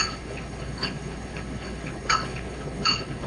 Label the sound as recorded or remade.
remade